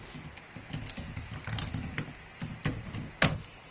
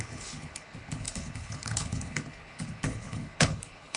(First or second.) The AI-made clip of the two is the second